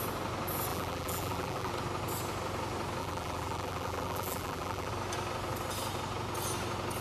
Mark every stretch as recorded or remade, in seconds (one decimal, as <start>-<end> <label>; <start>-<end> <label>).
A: 0.0-0.7 recorded; 0.7-1.7 remade; 1.7-3.0 recorded; 3.0-4.9 remade; 4.9-7.0 recorded